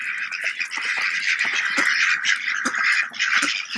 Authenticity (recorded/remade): recorded